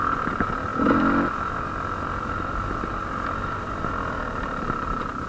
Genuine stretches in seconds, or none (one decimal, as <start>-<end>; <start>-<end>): 0.0-5.3